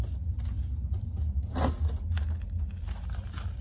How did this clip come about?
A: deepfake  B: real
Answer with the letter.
B